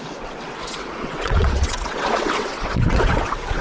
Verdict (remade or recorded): remade